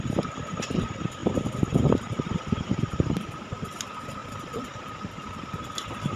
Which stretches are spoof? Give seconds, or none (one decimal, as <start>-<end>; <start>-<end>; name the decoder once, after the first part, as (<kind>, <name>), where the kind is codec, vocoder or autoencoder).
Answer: 0.0-6.2 (vocoder, BigVGAN v2)